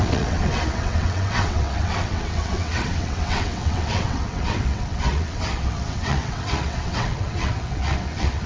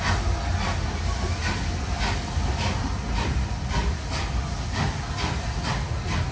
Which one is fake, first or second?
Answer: first